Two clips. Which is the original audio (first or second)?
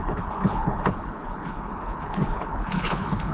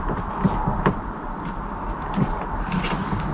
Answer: second